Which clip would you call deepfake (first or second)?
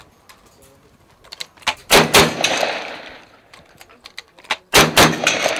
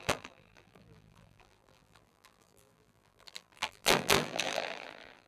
second